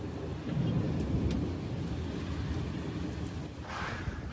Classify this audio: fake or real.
real